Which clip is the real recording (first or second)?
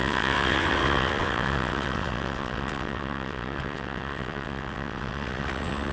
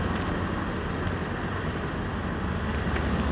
second